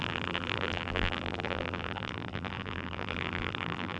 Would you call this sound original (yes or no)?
no